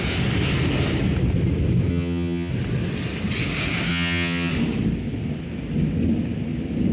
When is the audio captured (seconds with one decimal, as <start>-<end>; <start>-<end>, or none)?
0.0-1.9; 2.5-3.9; 4.5-6.9